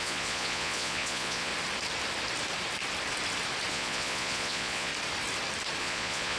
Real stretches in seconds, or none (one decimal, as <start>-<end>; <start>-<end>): 1.5-3.7; 4.9-5.8